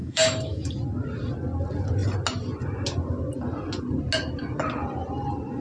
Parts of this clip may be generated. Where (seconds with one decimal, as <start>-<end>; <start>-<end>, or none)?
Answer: 0.0-0.7